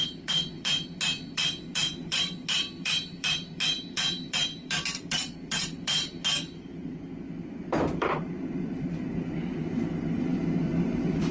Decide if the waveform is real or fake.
fake